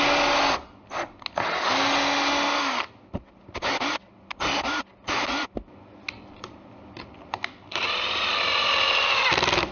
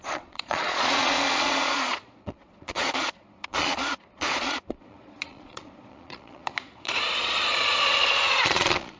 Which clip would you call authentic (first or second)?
first